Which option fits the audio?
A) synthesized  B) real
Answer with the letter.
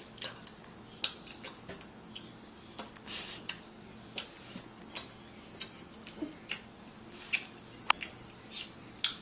B